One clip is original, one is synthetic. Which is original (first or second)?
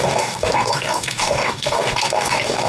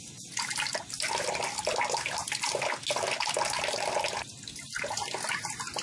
second